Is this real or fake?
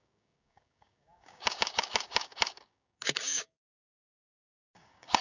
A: fake